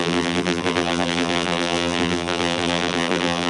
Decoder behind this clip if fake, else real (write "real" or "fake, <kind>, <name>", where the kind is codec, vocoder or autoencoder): fake, vocoder, BigVGAN v2